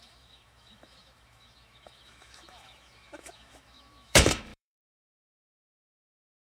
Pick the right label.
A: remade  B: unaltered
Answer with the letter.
A